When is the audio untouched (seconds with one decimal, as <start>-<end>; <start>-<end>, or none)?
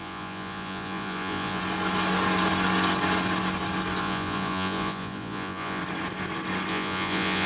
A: 1.6-4.0; 5.8-6.7